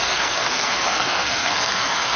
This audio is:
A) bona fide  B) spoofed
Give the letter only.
B